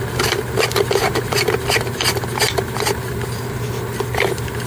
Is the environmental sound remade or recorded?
recorded